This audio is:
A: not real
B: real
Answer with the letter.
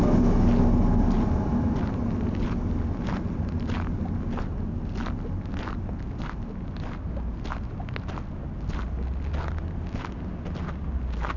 B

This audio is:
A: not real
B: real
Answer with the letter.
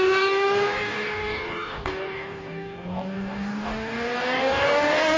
A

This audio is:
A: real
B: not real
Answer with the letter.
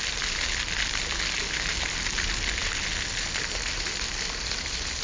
A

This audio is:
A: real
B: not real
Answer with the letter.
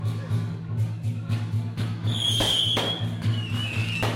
B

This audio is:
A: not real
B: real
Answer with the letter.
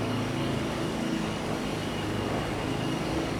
A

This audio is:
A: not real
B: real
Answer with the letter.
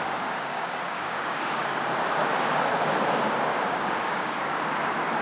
A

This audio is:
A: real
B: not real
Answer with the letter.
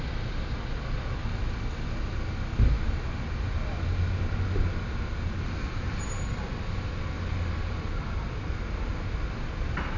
A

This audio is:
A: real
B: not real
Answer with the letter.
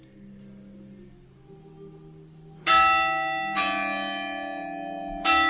A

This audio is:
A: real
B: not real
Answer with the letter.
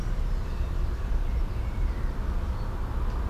A